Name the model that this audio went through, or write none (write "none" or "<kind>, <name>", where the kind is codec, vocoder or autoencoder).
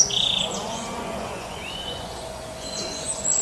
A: vocoder, Vocos